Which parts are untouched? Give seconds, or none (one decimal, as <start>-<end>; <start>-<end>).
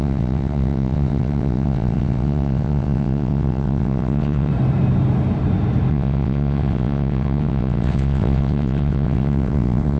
4.5-5.9